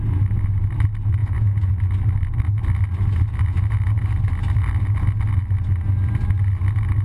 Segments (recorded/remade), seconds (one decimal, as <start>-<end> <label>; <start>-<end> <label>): 0.0-1.2 recorded; 1.2-1.7 remade; 1.7-7.0 recorded